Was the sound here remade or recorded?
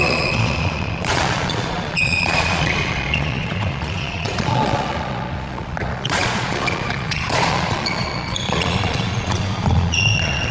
remade